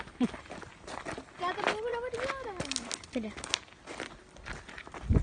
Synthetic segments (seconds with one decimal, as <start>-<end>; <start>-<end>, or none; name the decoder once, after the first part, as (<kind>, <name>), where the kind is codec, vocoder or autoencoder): none